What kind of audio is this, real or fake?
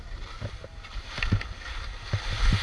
real